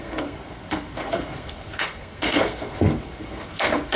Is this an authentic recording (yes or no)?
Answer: no